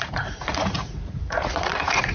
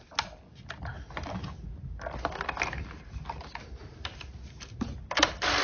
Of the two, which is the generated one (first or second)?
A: first